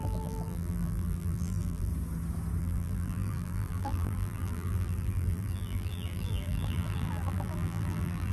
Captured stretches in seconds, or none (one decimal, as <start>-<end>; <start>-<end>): 1.9-2.6